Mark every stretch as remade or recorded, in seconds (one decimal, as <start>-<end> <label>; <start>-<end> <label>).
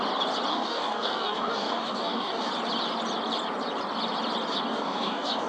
0.0-0.5 recorded; 0.5-2.5 remade; 2.5-4.7 recorded; 4.7-5.5 remade